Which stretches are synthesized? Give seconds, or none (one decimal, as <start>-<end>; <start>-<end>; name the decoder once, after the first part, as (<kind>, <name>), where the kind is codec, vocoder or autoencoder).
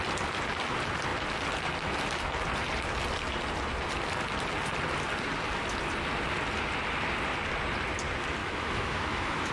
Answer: 8.4-9.5 (autoencoder, DAC-VAE)